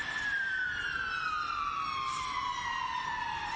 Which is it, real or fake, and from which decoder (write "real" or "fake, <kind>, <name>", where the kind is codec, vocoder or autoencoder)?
fake, vocoder, BigVGAN v2